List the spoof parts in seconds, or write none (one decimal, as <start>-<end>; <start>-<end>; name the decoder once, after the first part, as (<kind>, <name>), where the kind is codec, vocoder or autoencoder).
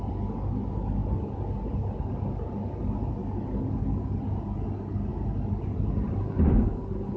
none